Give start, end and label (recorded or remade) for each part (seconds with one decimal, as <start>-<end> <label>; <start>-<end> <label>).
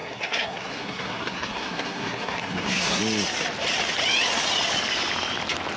0.0-3.0 remade; 3.0-5.8 recorded